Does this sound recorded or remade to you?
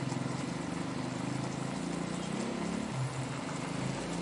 recorded